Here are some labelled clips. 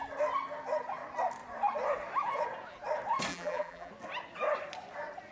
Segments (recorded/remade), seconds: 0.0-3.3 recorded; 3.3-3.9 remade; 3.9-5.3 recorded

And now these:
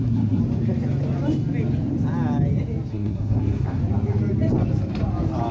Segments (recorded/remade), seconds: 0.0-0.4 remade; 0.4-2.9 recorded; 2.9-3.8 remade; 3.8-5.5 recorded

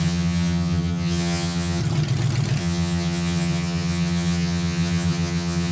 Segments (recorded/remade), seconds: 0.0-1.8 remade; 1.8-2.6 recorded; 2.6-5.7 remade